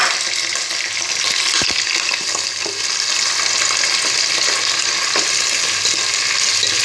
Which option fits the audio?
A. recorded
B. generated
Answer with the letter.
A